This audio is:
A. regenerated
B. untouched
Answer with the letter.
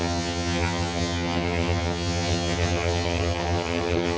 A